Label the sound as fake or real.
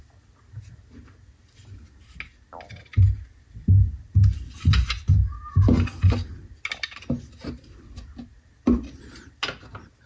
real